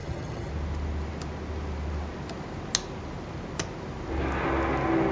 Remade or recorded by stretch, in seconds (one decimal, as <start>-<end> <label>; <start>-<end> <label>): 0.0-0.5 remade; 0.5-5.1 recorded